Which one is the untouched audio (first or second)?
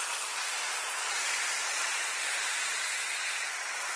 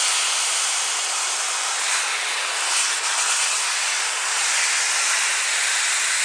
second